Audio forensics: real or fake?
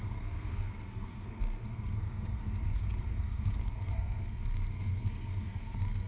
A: fake